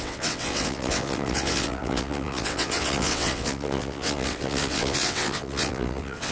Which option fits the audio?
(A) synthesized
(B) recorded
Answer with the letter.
A